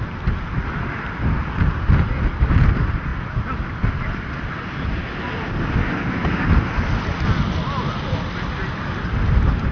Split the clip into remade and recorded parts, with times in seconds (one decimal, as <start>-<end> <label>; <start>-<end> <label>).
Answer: 0.0-9.7 recorded